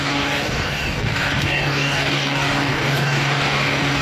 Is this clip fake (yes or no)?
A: yes